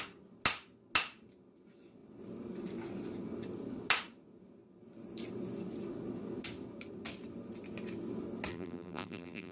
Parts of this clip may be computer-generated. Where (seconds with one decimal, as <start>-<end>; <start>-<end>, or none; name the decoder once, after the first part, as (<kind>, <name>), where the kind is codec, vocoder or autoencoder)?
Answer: 8.5-9.5 (vocoder, BigVGAN v2)